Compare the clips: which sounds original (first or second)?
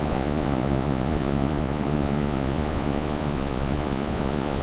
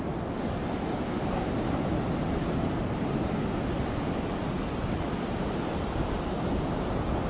second